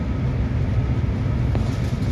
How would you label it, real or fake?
real